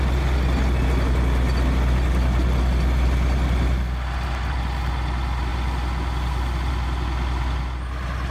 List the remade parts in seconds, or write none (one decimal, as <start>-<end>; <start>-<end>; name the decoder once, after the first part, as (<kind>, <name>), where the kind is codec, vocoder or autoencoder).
none